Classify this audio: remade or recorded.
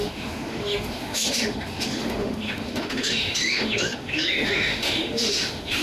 remade